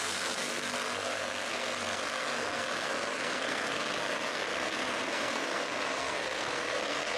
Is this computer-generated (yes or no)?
yes